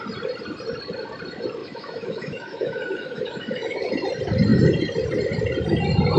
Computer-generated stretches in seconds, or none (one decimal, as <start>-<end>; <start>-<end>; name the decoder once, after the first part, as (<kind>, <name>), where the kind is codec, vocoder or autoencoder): 1.6-3.9 (autoencoder, DAC-VAE)